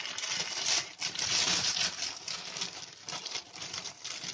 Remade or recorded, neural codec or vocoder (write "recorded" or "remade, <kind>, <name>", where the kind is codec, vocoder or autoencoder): recorded